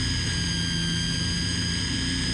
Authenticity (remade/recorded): recorded